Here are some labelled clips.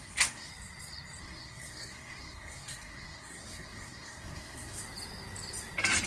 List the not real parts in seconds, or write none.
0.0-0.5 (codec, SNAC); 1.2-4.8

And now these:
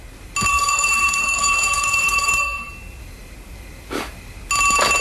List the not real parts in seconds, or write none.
0.5-2.7 (codec, SNAC)

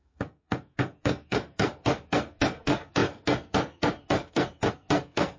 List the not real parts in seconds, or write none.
0.0-5.4 (codec, SNAC)